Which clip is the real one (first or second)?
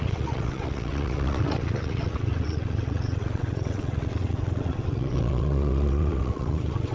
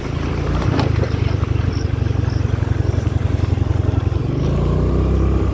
second